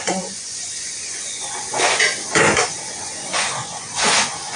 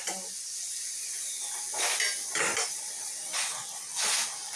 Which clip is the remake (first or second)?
first